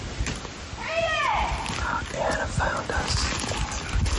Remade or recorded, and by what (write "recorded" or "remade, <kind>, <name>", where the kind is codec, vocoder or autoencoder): recorded